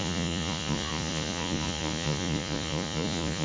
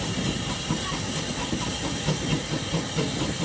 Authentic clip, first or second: second